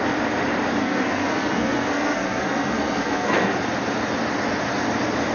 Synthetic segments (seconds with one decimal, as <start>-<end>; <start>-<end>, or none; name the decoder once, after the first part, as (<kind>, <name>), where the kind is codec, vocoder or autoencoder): 0.8-3.5 (codec, SNAC)